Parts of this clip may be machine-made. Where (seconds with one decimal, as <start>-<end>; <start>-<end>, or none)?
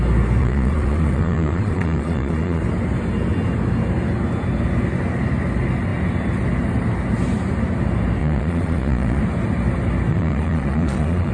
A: 0.4-2.6; 8.2-9.2; 10.1-11.3